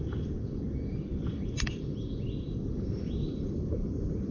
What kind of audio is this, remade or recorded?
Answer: remade